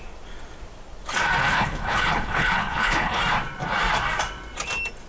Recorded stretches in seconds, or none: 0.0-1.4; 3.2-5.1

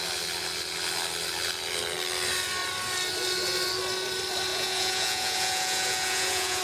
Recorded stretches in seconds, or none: 0.0-4.5